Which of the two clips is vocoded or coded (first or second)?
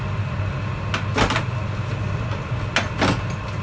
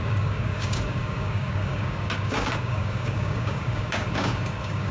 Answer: second